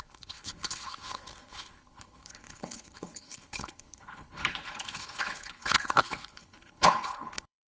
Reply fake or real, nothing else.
fake